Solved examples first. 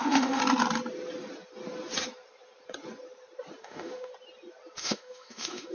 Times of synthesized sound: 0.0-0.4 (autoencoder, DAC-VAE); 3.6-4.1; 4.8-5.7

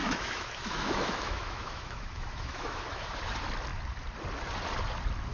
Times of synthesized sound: 0.0-3.2 (autoencoder, DAC-VAE)